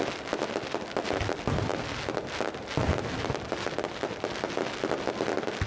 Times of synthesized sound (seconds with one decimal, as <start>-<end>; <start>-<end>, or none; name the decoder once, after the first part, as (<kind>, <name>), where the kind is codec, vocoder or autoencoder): none